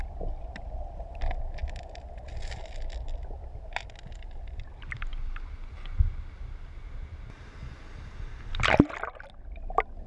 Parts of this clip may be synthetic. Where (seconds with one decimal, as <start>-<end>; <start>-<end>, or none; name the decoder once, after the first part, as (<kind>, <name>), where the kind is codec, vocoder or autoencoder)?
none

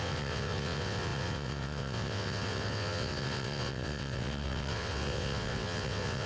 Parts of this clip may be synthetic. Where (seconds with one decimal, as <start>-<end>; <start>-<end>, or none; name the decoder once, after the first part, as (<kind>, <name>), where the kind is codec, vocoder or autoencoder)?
0.0-6.3 (vocoder, WaveNeXt)

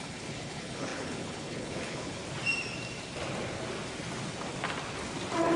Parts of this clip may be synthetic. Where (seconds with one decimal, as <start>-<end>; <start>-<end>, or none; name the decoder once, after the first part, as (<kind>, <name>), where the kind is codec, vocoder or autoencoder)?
0.0-2.2 (codec, HILCodec)

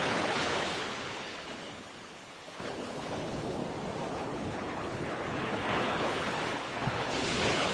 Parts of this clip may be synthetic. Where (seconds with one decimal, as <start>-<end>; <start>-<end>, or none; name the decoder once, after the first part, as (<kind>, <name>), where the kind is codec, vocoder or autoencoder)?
0.0-3.6 (codec, HILCodec); 4.1-7.7